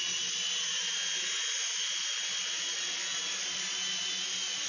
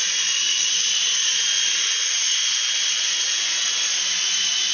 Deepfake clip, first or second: second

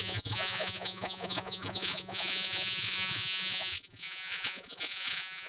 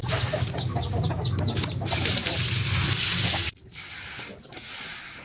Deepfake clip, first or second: first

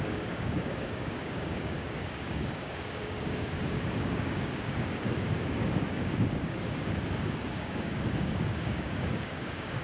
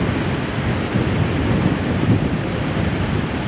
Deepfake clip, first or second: first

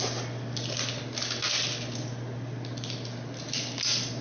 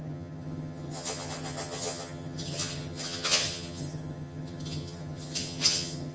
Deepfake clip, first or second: second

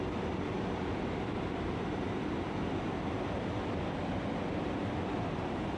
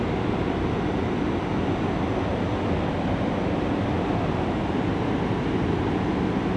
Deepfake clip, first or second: first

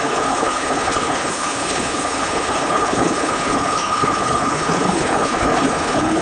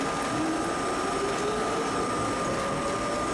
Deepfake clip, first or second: first